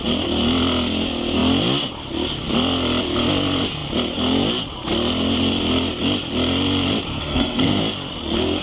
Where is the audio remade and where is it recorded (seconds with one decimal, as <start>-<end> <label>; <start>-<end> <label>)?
0.0-7.1 recorded; 7.1-7.8 remade; 7.8-8.6 recorded